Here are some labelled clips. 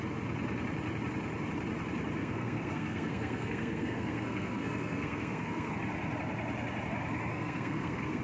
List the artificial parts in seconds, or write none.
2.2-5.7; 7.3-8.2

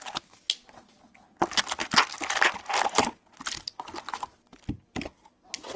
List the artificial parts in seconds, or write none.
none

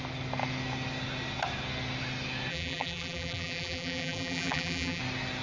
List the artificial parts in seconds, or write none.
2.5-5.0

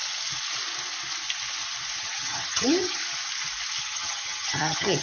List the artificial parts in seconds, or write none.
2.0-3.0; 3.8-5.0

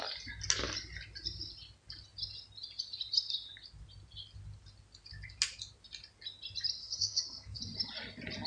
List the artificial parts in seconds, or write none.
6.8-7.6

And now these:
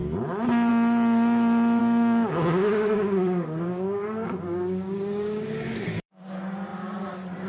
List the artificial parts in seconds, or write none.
1.8-6.3

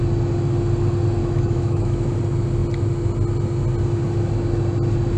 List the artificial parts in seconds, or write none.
1.2-2.1

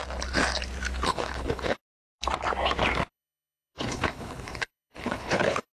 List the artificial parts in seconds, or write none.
1.1-1.8; 3.1-5.7